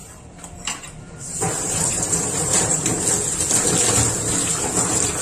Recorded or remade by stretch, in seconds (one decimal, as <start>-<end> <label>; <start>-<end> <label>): 0.0-3.0 remade; 3.0-5.2 recorded